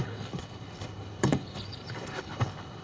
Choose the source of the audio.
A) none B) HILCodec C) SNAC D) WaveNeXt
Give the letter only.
B